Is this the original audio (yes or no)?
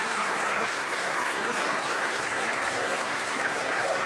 no